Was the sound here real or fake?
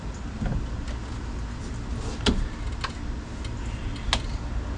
real